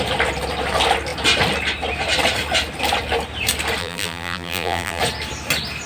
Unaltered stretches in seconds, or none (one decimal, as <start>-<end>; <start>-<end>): 0.0-3.8; 5.0-5.9